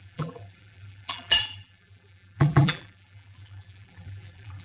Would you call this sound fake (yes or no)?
yes